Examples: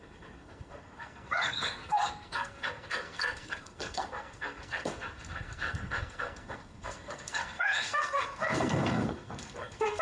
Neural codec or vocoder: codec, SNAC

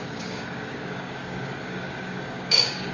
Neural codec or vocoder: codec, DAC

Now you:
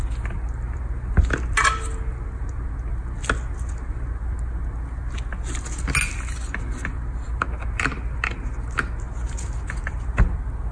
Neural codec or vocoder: none